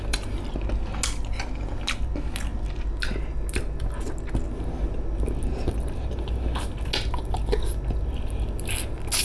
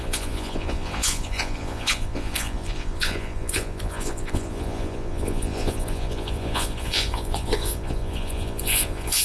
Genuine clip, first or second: first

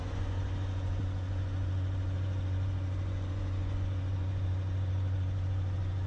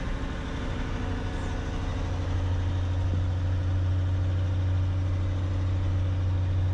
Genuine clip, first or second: second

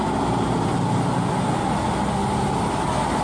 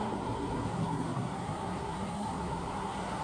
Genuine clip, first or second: first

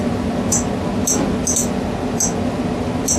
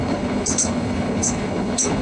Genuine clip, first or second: first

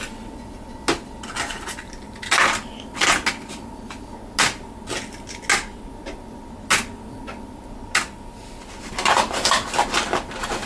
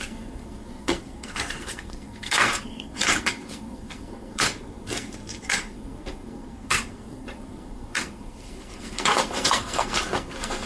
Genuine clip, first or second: first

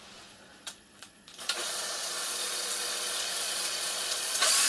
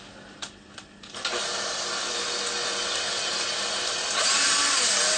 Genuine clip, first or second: second